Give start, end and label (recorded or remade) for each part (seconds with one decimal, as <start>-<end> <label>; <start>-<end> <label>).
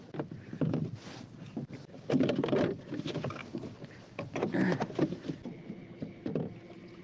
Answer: 0.0-5.5 recorded; 5.5-6.2 remade; 6.2-7.0 recorded